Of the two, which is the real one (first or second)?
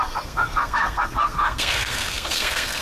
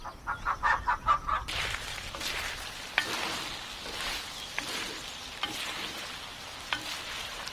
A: second